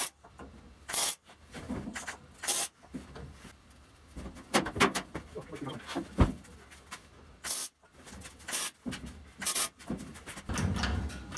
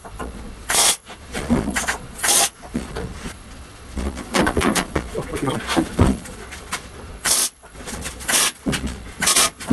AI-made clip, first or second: second